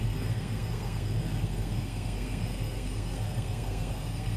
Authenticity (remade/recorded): remade